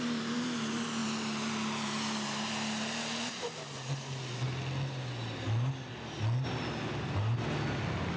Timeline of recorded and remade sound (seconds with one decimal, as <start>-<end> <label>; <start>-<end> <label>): 0.0-8.2 recorded